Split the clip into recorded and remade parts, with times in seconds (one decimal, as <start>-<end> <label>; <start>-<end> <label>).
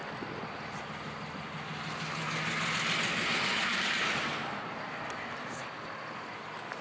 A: 0.0-0.8 remade; 0.8-3.3 recorded; 3.3-5.7 remade; 5.7-6.8 recorded